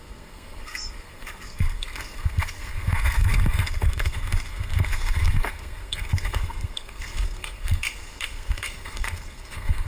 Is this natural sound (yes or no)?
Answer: no